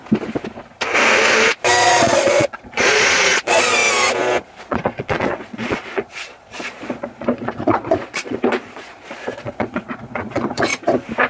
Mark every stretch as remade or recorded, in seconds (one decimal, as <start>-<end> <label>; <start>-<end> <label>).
0.0-1.8 recorded; 1.8-3.8 remade; 3.8-4.6 recorded; 4.6-10.7 remade; 10.7-11.3 recorded